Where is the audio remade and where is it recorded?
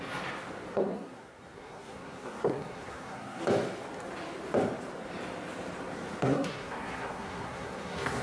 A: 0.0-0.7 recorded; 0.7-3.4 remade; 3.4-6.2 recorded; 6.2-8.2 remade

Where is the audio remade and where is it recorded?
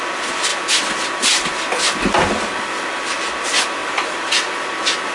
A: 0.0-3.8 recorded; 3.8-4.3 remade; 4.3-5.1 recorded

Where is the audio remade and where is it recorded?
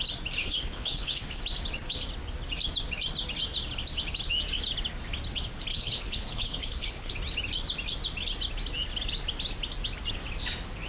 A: 0.0-0.4 recorded; 0.4-1.4 remade; 1.4-5.7 recorded; 5.7-7.1 remade; 7.1-10.9 recorded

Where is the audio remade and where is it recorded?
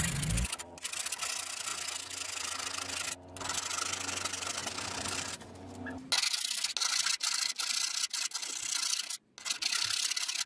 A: 0.0-4.6 recorded; 4.6-5.3 remade; 5.3-10.5 recorded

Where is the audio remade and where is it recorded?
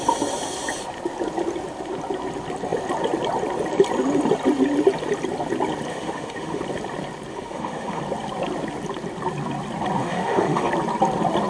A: 0.0-5.9 recorded; 5.9-6.6 remade; 6.6-7.3 recorded; 7.3-8.0 remade; 8.0-10.0 recorded; 10.0-10.7 remade; 10.7-11.5 recorded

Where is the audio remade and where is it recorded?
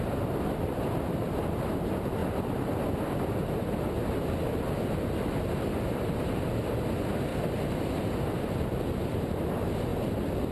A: 0.0-10.5 recorded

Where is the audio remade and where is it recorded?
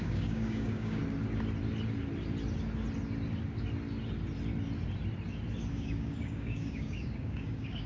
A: 0.0-1.0 remade; 1.0-5.7 recorded; 5.7-7.9 remade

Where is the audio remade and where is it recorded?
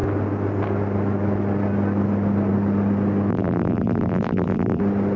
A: 0.0-3.3 recorded; 3.3-4.8 remade; 4.8-5.2 recorded